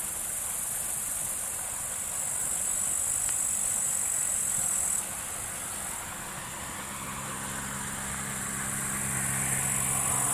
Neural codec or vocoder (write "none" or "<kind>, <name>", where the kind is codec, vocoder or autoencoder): none